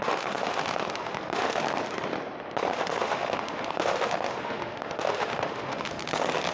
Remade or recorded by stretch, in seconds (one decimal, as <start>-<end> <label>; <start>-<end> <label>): 0.0-1.6 remade; 1.6-2.7 recorded; 2.7-6.0 remade; 6.0-6.5 recorded